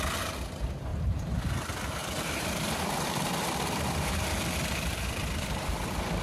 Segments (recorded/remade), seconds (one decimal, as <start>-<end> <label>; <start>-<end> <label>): 0.0-0.9 remade; 0.9-1.6 recorded; 1.6-2.0 remade; 2.0-2.8 recorded; 2.8-6.2 remade